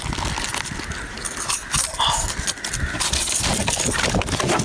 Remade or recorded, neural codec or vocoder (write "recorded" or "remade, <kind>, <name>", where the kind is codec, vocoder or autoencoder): recorded